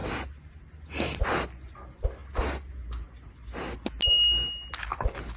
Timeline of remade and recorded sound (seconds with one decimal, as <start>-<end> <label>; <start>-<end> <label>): 0.0-5.4 recorded